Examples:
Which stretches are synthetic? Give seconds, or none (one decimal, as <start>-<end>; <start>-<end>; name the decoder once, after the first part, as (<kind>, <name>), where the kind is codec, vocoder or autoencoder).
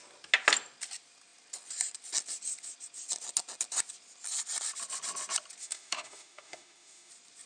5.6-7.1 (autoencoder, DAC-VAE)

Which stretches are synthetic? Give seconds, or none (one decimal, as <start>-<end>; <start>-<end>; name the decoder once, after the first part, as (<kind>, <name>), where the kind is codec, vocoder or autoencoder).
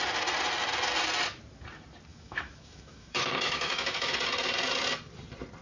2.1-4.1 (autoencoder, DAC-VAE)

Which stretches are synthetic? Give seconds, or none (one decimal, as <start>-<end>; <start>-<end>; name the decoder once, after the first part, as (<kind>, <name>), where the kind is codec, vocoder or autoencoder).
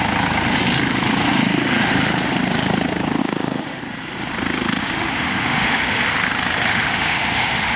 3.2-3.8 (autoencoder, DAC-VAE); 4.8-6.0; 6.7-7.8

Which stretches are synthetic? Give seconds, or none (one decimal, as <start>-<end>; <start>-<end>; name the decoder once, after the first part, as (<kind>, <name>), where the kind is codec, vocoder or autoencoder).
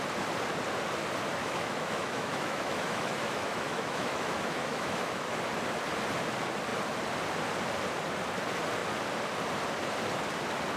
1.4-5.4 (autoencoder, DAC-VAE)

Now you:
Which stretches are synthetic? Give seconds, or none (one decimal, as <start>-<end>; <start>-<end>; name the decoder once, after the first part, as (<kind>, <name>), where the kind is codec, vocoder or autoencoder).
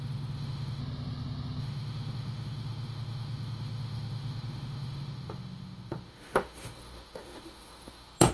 0.0-0.8 (autoencoder, DAC-VAE); 1.6-8.3